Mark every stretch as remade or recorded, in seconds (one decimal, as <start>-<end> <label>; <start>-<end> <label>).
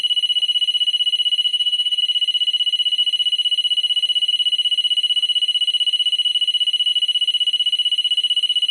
0.0-1.5 recorded; 1.5-2.0 remade; 2.0-8.7 recorded